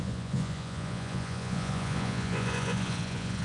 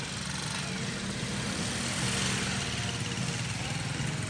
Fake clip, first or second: first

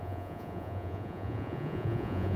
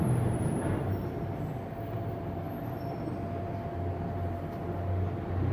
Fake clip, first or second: first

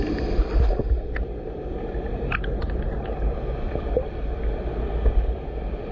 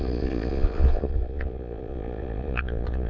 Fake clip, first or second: second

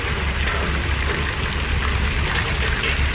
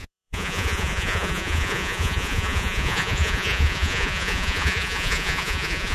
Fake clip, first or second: second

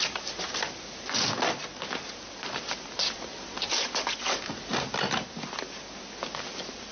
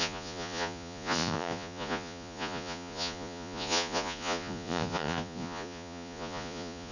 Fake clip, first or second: second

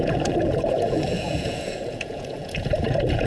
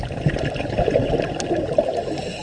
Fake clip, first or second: first